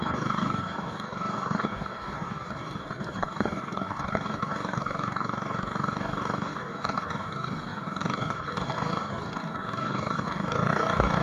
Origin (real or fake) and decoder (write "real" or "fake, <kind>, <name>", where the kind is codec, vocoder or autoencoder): fake, codec, DAC